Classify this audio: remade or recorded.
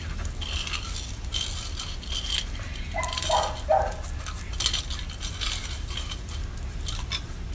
recorded